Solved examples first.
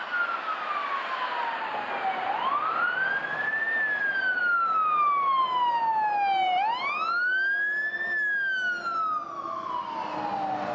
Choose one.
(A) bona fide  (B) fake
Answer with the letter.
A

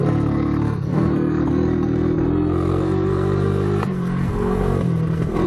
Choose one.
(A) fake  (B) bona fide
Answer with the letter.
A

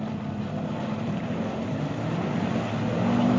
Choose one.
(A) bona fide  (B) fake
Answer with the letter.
A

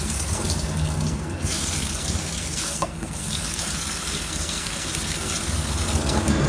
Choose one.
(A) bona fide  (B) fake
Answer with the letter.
B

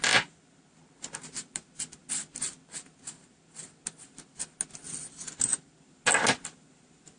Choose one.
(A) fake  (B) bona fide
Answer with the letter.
B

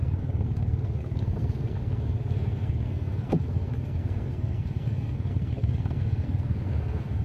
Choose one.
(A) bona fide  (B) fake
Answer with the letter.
B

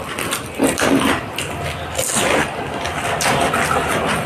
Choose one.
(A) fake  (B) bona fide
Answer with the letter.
B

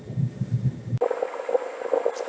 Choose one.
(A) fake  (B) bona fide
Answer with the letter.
B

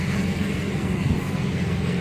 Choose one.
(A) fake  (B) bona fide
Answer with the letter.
A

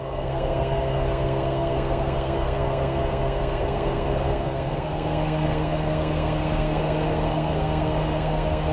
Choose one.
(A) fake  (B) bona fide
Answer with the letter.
A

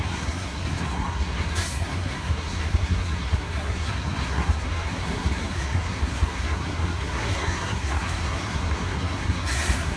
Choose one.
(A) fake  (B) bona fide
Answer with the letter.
A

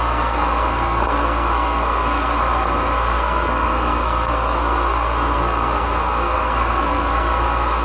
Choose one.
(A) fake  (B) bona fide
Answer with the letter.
A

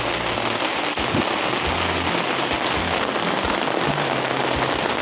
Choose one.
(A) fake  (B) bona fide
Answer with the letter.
B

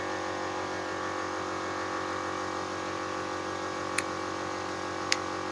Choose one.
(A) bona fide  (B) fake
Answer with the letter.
A